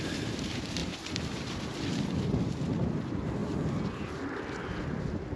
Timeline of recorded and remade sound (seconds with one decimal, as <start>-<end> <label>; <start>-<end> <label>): 0.0-5.4 remade